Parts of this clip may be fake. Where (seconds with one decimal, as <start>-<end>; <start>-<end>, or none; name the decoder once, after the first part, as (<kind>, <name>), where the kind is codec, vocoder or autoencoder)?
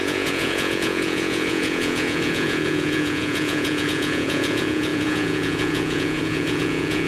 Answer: 0.0-7.1 (vocoder, Vocos)